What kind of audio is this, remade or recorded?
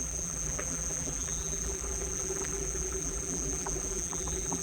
remade